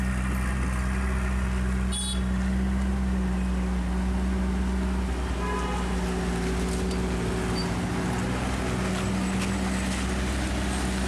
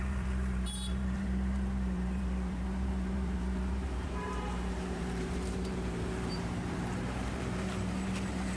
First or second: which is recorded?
first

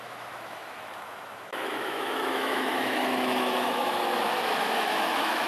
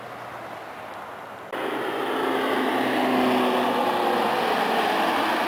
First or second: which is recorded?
second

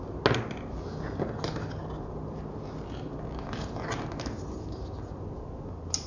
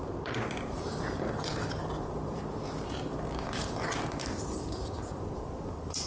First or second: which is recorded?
first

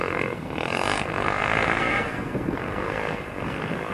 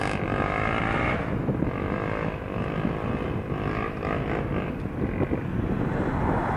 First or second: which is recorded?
second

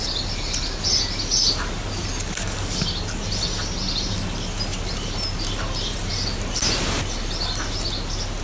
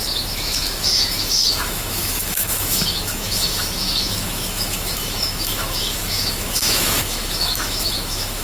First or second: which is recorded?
first